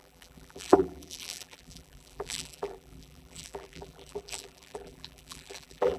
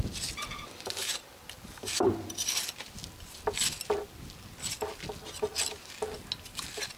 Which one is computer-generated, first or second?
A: first